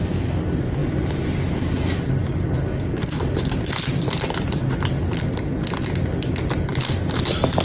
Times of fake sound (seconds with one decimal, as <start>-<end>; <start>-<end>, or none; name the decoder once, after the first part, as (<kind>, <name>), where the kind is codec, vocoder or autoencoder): 2.2-3.2 (codec, DAC)

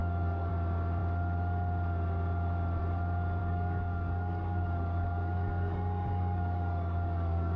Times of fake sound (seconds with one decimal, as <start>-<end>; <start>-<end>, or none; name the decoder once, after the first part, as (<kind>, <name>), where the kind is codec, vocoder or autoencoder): 0.0-0.5 (codec, DAC); 3.4-7.6

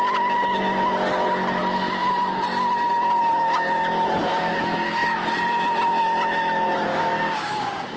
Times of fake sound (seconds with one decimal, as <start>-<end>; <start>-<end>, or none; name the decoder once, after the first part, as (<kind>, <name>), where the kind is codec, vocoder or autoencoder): 6.9-8.0 (codec, DAC)

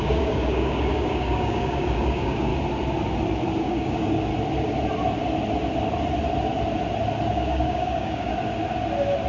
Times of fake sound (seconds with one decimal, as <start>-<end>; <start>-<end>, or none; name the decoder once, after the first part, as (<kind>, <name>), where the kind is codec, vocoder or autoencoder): 0.0-2.5 (codec, DAC); 3.6-4.3; 7.3-8.3

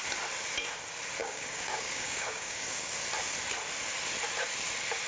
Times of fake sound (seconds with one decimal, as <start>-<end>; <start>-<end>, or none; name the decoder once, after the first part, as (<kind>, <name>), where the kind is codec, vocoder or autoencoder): 1.2-2.9 (codec, DAC)

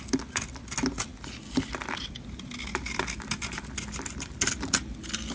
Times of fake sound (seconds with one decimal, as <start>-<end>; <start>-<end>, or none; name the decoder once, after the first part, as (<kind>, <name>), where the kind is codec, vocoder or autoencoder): none

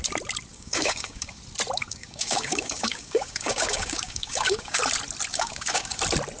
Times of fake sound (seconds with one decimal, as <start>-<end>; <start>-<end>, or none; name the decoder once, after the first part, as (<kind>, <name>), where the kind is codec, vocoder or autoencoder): 0.5-1.4 (codec, DAC); 1.8-4.8; 5.3-6.0

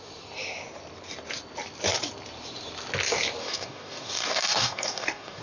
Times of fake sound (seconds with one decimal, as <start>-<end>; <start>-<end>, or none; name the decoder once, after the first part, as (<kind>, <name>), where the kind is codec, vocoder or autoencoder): 3.4-5.4 (codec, DAC)